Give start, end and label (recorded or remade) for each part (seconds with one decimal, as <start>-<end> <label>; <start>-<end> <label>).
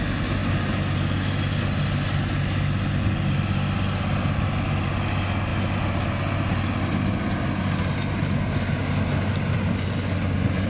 0.0-10.7 recorded